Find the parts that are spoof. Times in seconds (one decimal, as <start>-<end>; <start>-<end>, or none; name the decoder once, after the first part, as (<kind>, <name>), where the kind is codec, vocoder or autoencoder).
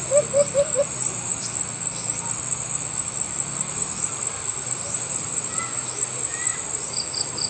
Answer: 0.0-1.3 (vocoder, BigVGAN v2); 4.5-7.5